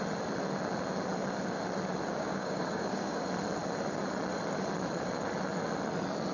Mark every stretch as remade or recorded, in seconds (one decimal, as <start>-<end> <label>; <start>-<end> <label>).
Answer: 0.0-2.1 recorded; 2.1-3.2 remade; 3.2-6.3 recorded